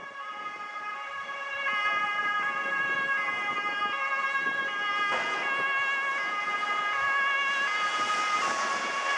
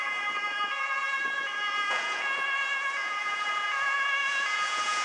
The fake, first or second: second